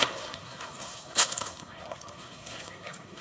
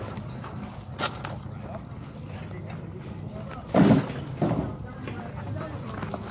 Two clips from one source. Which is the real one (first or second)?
second